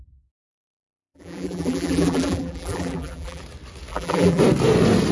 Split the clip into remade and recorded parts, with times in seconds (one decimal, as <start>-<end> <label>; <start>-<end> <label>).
0.0-0.5 recorded; 0.5-3.4 remade; 3.4-3.9 recorded; 3.9-4.4 remade; 4.4-5.1 recorded